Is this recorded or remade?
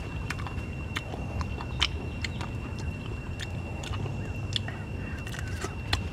recorded